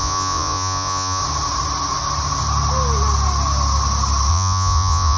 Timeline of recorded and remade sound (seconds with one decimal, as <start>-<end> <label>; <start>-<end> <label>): 0.0-1.2 remade; 1.2-4.3 recorded; 4.3-5.2 remade